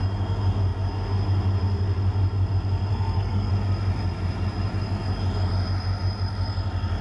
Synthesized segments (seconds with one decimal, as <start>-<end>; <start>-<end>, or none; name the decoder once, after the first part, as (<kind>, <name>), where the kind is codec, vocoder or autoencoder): 2.9-3.5 (codec, SNAC)